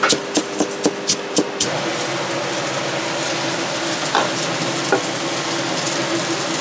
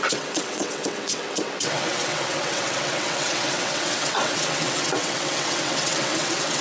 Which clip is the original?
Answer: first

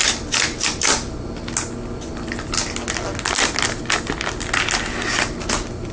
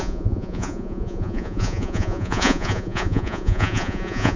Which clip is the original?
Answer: first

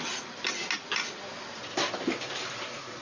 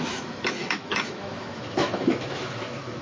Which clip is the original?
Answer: first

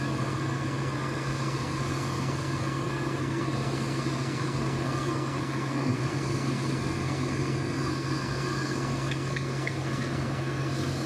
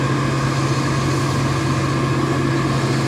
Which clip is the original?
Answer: second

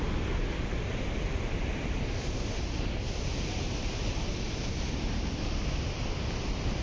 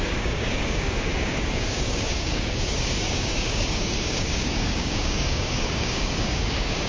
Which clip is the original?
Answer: first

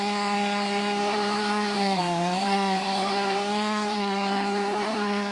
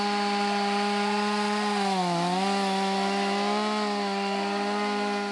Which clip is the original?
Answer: second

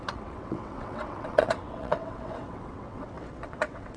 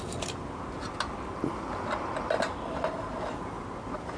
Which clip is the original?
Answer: second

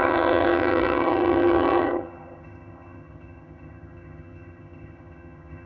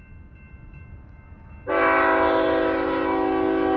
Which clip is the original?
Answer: second